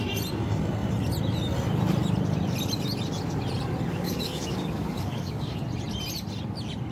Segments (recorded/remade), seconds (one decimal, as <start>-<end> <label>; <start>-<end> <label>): 0.0-3.9 recorded; 3.9-5.6 remade; 5.6-6.9 recorded